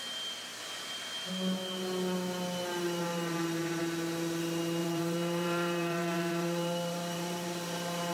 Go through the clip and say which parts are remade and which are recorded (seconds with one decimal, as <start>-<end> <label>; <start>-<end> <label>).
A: 0.0-3.0 recorded; 3.0-3.8 remade; 3.8-4.8 recorded; 4.8-8.1 remade